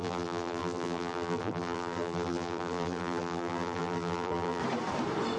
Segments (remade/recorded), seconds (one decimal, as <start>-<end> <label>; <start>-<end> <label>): 0.0-4.6 remade; 4.6-5.4 recorded